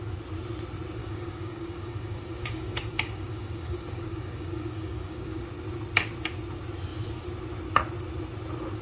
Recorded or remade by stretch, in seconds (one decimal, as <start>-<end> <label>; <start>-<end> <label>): 0.0-1.0 recorded; 1.0-5.4 remade; 5.4-8.8 recorded